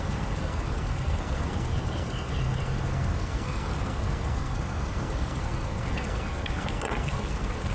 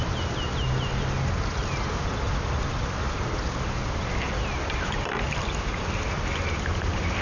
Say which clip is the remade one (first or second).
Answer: first